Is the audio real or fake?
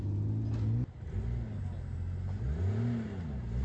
real